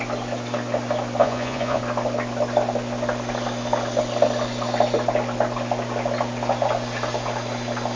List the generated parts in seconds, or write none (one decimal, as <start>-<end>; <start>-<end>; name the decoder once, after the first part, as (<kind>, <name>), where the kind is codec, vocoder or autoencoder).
1.2-1.8 (vocoder, Vocos)